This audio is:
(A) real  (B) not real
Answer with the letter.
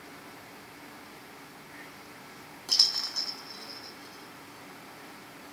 A